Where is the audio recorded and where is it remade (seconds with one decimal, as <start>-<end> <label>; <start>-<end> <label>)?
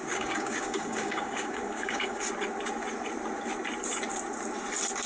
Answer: 0.0-2.2 remade; 2.2-5.1 recorded